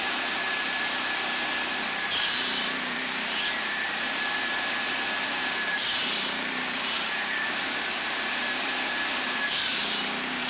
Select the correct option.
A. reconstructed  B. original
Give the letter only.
A